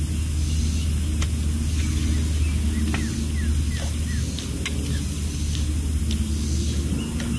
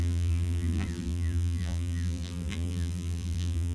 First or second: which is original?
first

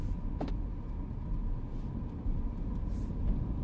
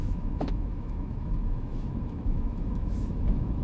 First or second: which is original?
first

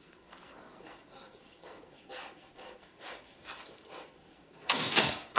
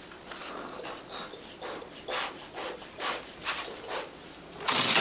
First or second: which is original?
second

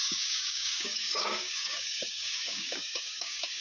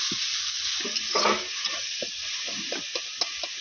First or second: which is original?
second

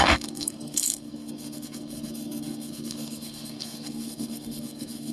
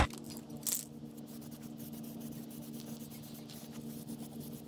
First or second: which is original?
second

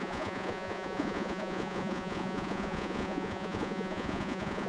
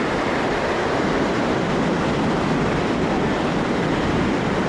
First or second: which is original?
second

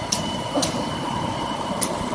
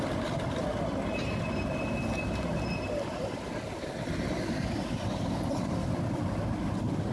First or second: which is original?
second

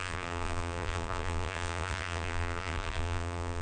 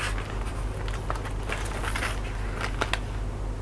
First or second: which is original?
second